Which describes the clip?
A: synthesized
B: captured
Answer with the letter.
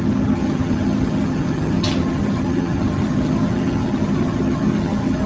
A